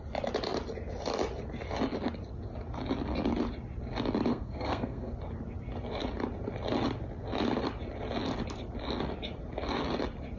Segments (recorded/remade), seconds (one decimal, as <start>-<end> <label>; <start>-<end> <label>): 0.0-4.3 recorded; 4.3-5.1 remade; 5.1-10.4 recorded